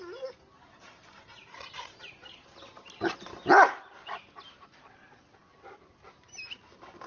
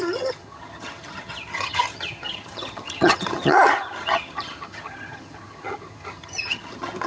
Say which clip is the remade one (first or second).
second